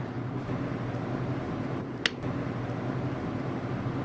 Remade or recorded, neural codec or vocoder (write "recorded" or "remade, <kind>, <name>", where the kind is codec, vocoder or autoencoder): recorded